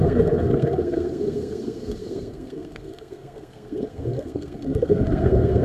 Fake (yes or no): yes